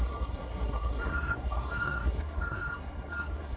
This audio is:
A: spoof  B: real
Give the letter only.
A